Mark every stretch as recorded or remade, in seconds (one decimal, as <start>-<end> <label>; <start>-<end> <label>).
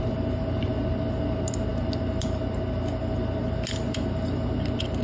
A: 0.0-5.0 recorded